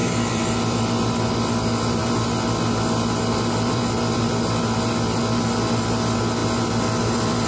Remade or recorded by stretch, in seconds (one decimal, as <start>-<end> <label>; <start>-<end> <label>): 0.0-0.9 remade; 0.9-2.0 recorded; 2.0-5.2 remade; 5.2-6.4 recorded; 6.4-7.5 remade